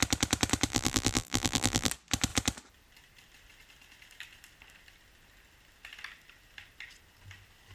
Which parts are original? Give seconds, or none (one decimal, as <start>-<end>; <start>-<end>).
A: 0.0-0.7; 1.9-7.7